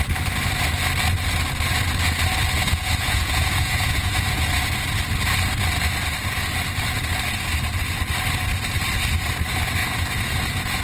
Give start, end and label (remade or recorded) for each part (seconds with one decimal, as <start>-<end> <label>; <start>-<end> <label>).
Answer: 0.0-2.6 recorded; 2.6-4.5 remade; 4.5-9.8 recorded; 9.8-10.8 remade